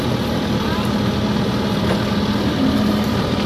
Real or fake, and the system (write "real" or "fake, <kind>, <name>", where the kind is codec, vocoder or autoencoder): real